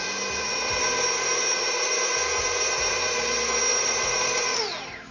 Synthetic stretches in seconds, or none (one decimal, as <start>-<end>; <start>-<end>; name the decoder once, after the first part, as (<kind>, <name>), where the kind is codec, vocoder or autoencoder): 3.7-5.1 (vocoder, BigVGAN v2)